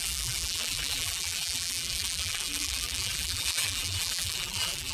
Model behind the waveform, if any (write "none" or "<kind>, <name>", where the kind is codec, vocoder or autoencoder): vocoder, BigVGAN v2